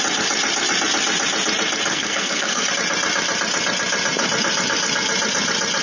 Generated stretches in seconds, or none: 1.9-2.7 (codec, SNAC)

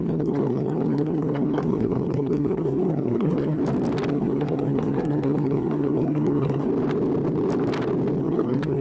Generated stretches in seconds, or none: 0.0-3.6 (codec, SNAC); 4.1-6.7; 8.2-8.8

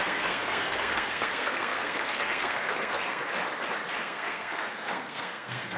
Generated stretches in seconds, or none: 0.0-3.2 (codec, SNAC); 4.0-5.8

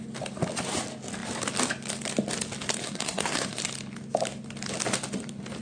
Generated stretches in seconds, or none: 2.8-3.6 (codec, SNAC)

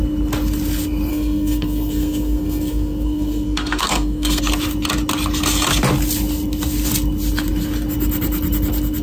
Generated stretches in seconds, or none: 1.1-4.4 (codec, SNAC)

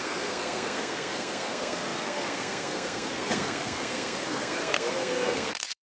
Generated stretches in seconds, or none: 0.0-5.9 (codec, SNAC)

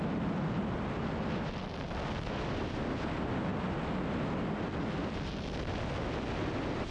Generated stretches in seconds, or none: none